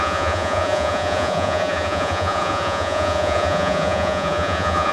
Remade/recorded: remade